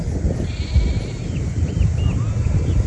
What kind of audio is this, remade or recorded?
recorded